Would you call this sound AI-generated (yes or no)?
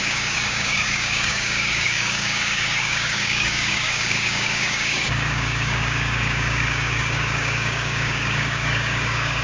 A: yes